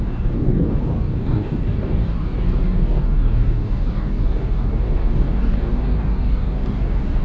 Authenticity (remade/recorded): remade